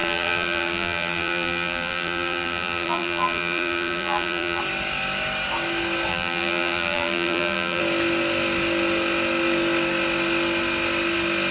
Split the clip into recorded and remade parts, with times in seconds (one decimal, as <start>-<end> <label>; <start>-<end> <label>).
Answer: 0.0-4.6 remade; 4.6-6.1 recorded; 6.1-7.8 remade; 7.8-11.5 recorded